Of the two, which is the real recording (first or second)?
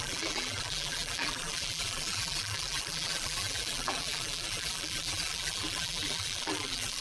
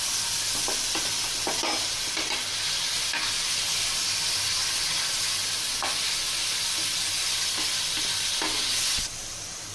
second